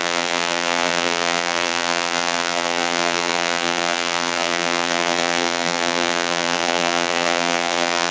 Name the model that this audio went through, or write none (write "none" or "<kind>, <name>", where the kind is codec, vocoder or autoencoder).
vocoder, BigVGAN v2